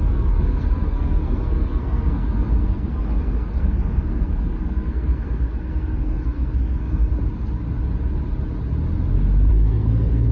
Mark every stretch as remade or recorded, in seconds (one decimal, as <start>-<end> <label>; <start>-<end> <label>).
0.0-7.1 remade; 7.1-9.5 recorded; 9.5-10.3 remade